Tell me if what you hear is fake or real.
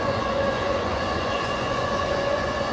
fake